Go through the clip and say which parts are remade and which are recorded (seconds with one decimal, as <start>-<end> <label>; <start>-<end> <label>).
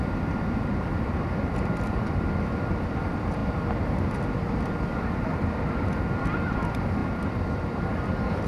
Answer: 0.0-8.5 remade